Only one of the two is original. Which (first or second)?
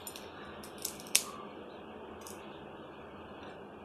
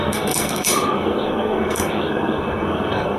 first